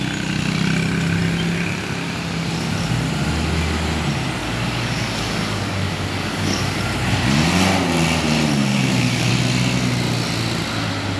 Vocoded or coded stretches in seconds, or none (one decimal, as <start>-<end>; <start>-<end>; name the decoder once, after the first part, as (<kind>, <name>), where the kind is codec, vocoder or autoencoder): 4.4-6.8 (codec, DAC); 8.7-9.3

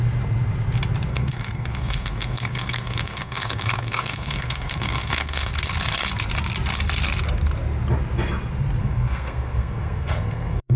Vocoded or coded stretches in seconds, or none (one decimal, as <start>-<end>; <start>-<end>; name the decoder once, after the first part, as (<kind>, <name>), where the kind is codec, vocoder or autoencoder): 1.1-5.5 (codec, SNAC); 8.8-10.8